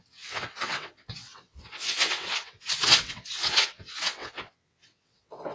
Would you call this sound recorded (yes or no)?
no